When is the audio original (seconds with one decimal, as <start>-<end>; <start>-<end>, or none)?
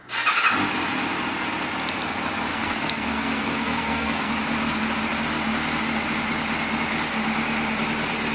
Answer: 0.0-2.5; 4.3-8.3